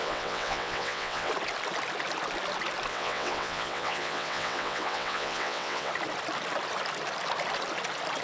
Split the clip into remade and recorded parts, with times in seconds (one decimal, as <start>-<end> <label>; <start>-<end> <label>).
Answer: 0.0-1.3 remade; 1.3-2.9 recorded; 2.9-5.9 remade; 5.9-8.2 recorded